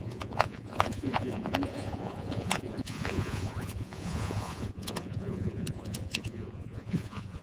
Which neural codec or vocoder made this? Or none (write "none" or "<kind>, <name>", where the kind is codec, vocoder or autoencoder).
vocoder, Vocos